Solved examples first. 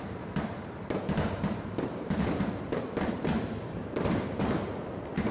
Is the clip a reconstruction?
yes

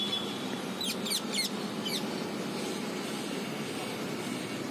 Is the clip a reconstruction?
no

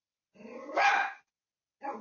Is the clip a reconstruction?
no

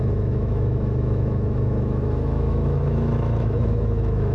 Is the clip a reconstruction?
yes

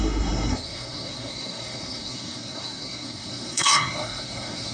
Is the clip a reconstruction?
yes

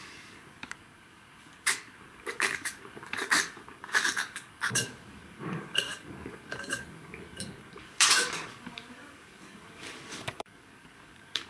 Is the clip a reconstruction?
yes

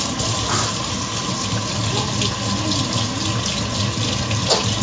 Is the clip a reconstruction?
no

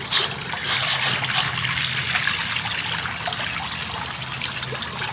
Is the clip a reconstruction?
no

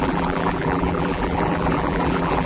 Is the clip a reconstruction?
yes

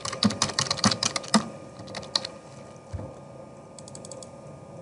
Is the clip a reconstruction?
no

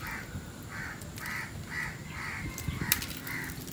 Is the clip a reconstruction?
no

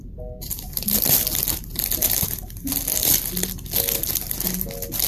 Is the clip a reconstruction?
no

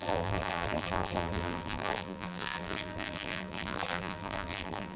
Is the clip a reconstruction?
yes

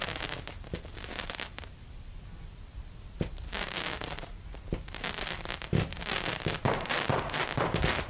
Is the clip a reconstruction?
yes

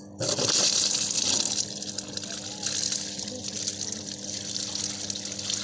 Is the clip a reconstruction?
no